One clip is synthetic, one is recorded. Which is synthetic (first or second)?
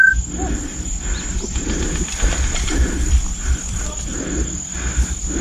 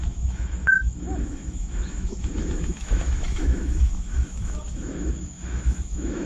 second